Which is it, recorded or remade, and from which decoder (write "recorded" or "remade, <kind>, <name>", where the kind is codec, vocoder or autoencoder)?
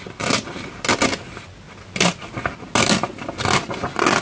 recorded